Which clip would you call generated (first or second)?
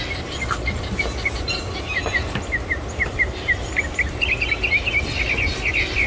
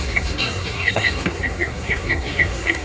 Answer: second